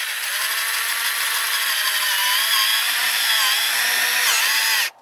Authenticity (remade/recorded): recorded